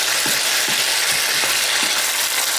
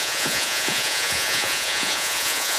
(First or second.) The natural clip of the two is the first